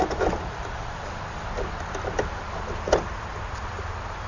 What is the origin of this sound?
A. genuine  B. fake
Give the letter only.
A